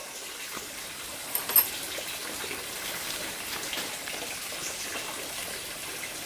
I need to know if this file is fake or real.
real